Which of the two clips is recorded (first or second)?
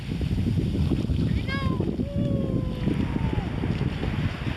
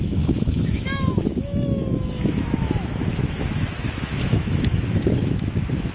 first